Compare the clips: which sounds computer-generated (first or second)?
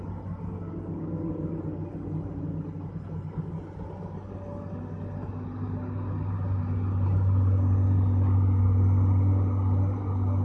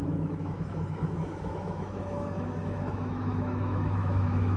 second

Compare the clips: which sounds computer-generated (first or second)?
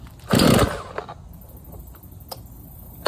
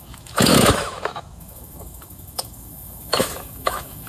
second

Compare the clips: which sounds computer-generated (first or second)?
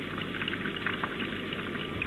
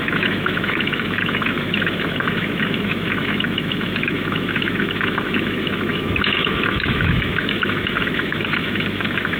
second